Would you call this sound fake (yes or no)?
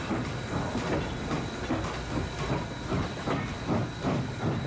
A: no